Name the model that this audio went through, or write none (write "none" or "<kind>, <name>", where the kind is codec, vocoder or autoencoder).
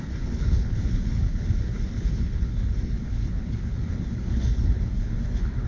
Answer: codec, HILCodec